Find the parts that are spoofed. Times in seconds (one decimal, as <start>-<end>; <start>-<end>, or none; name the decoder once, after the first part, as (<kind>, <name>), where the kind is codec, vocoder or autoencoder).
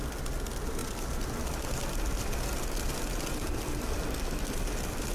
none